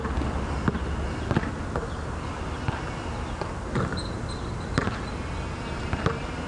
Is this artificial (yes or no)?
no